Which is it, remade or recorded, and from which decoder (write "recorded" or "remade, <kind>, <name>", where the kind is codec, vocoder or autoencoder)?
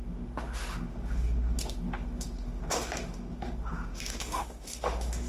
remade, autoencoder, DAC-VAE